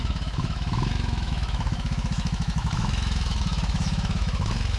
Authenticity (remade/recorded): remade